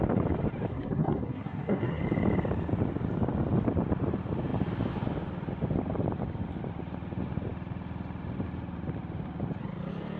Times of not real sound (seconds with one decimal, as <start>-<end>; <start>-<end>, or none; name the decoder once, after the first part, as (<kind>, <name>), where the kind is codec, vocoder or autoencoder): 0.7-2.0 (codec, SNAC)